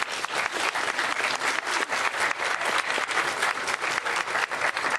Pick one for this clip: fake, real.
real